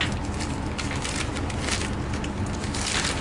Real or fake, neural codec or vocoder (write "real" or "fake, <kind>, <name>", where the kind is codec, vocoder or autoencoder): real